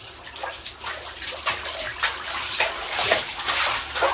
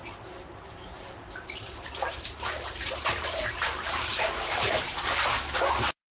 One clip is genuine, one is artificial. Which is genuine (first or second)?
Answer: first